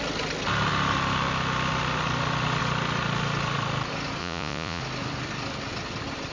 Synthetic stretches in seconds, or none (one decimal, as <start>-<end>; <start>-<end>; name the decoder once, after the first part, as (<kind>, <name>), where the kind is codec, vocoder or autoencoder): 4.2-4.8 (vocoder, Vocos)